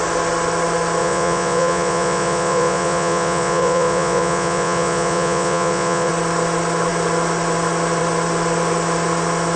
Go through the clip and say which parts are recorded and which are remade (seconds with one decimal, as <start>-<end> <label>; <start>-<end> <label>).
0.0-1.0 recorded; 1.0-6.1 remade; 6.1-9.6 recorded